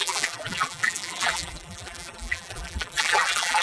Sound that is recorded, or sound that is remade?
remade